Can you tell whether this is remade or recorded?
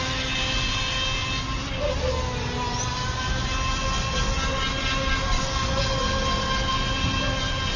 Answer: recorded